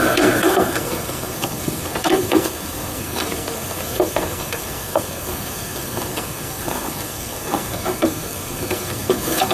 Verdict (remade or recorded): remade